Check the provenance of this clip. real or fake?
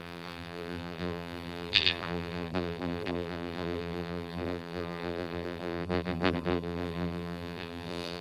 fake